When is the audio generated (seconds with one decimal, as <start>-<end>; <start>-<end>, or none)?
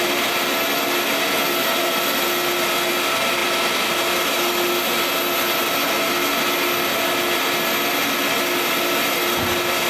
none